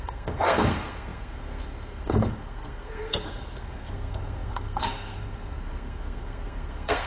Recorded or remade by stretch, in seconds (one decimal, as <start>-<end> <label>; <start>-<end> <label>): 0.0-7.1 remade